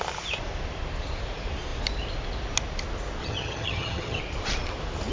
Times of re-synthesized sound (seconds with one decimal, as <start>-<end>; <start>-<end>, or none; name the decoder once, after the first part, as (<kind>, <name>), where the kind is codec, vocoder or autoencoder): 3.2-4.2 (vocoder, HiFi-GAN)